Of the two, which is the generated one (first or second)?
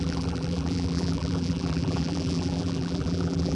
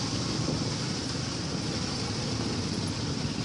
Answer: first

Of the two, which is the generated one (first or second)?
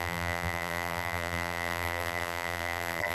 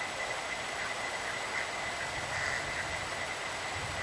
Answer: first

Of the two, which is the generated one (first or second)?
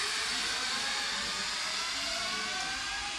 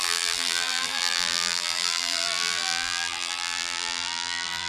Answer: second